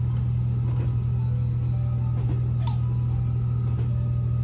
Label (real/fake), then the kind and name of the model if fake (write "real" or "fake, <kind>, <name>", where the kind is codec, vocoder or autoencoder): real